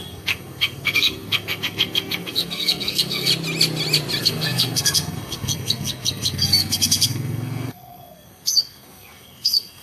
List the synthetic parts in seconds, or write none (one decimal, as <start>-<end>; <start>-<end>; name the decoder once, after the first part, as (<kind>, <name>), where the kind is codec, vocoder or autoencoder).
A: 0.0-3.3 (codec, SNAC); 4.2-9.8